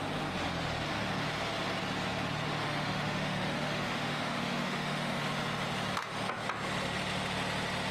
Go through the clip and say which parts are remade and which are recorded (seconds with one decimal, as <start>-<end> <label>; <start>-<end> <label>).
0.0-2.6 recorded; 2.6-5.2 remade; 5.2-7.9 recorded